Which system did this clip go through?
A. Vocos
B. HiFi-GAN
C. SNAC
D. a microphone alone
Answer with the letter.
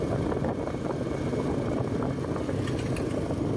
D